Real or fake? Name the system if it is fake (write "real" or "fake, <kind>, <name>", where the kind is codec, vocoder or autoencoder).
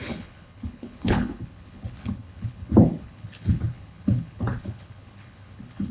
fake, codec, HILCodec